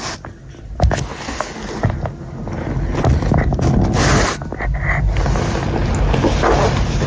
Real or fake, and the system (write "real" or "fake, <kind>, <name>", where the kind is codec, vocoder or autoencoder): real